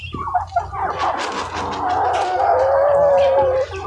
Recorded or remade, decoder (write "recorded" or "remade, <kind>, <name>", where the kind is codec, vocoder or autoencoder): recorded